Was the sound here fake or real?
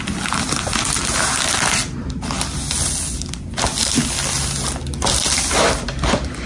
real